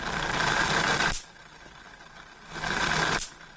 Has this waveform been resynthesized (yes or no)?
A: no